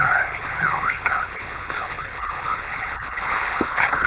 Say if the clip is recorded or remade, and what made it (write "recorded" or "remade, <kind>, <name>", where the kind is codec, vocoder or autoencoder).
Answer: remade, codec, HILCodec